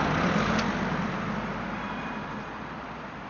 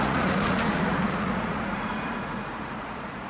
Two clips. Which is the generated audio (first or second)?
second